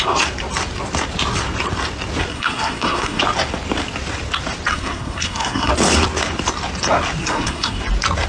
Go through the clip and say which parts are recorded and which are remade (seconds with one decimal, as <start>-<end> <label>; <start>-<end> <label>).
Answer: 0.0-2.3 recorded; 2.3-3.2 remade; 3.2-4.7 recorded; 4.7-5.7 remade; 5.7-7.2 recorded; 7.2-7.8 remade; 7.8-8.3 recorded